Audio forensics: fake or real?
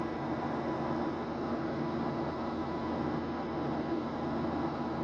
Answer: real